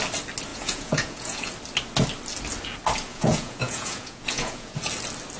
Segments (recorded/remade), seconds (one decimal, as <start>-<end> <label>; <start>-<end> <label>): 0.0-0.5 recorded; 0.5-1.5 remade; 1.5-3.1 recorded; 3.1-4.9 remade; 4.9-5.4 recorded